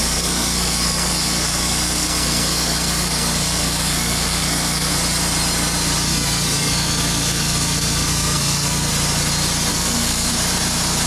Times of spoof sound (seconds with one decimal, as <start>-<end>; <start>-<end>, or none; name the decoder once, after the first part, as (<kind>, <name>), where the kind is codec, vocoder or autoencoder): 0.0-4.9 (codec, SNAC); 6.1-8.9; 9.7-10.3